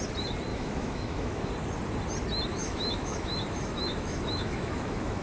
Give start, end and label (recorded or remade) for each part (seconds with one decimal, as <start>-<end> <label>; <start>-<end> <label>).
0.0-0.5 recorded; 0.5-1.5 remade; 1.5-2.5 recorded; 2.5-5.2 remade